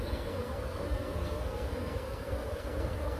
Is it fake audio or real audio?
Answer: fake